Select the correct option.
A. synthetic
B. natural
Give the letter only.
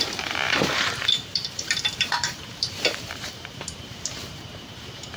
A